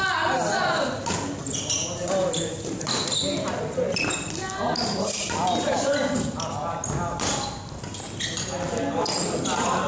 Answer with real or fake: real